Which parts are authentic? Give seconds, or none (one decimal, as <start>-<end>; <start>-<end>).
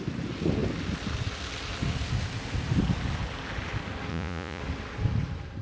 0.0-4.1; 4.6-5.6